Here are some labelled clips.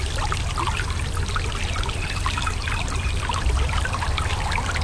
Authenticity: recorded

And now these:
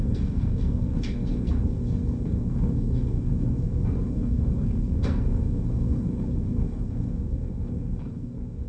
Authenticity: remade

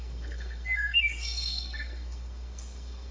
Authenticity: remade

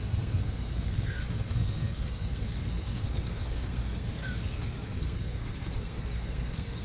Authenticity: remade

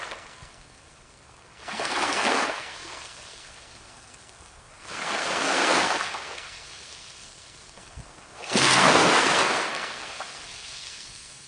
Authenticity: remade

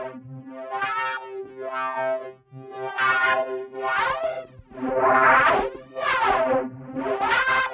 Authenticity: recorded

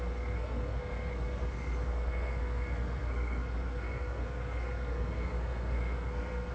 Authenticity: remade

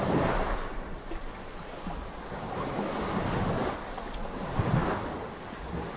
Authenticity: recorded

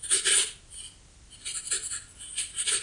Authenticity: recorded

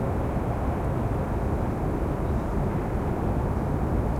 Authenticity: recorded